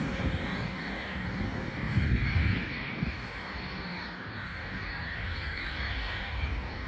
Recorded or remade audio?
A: remade